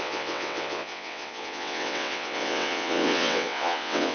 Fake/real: fake